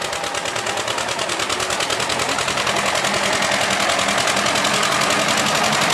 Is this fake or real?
real